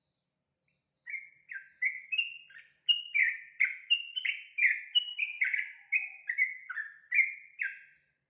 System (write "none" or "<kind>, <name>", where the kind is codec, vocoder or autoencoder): none